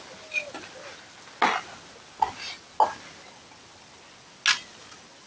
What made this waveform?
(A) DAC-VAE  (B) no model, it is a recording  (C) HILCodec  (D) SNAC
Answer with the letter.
B